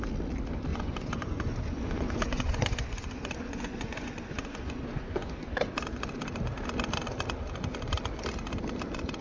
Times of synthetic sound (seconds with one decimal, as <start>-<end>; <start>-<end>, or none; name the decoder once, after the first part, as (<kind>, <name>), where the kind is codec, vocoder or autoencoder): 0.7-5.6 (vocoder, Vocos)